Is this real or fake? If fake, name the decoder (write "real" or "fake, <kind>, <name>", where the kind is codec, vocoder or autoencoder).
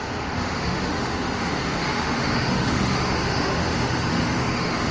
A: fake, autoencoder, DAC-VAE